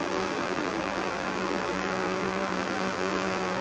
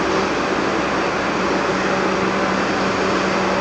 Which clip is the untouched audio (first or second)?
second